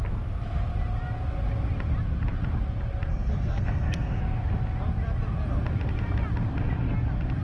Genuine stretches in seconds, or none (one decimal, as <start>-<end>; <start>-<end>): 0.0-3.1; 4.2-7.4